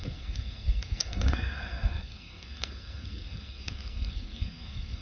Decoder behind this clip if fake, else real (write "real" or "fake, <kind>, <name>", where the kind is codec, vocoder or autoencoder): fake, codec, SNAC